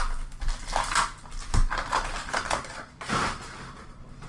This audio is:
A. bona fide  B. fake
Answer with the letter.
A